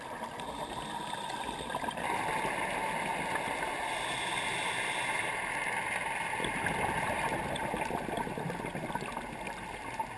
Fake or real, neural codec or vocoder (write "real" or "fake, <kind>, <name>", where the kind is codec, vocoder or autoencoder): real